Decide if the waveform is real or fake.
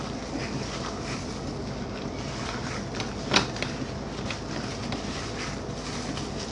real